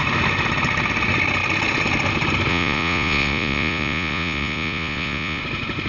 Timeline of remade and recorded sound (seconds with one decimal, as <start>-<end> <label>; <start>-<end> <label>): 0.0-2.5 recorded; 2.5-5.4 remade; 5.4-5.9 recorded